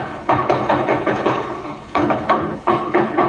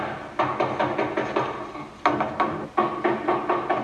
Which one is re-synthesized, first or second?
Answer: first